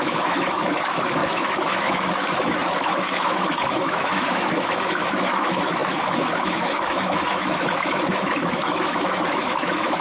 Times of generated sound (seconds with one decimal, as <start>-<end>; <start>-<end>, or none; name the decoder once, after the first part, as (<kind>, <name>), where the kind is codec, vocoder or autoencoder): 0.0-10.0 (autoencoder, DAC-VAE)